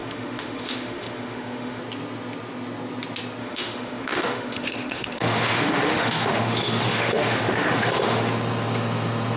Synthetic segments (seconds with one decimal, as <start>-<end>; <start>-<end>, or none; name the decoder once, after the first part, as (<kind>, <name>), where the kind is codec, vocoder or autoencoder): 0.0-1.8 (autoencoder, DAC-VAE); 3.4-8.2